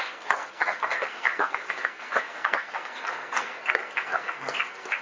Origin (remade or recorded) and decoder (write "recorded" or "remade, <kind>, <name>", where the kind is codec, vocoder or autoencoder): remade, codec, SNAC